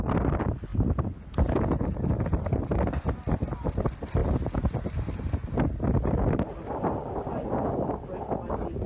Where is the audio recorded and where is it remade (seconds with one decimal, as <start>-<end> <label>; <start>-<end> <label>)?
0.0-8.9 recorded